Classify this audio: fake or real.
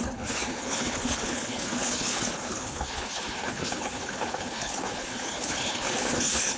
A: fake